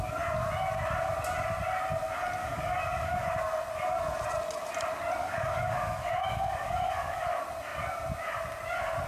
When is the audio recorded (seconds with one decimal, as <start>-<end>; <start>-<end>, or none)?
0.0-2.4; 3.3-5.2; 7.2-9.1